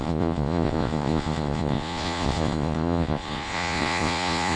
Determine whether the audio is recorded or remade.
remade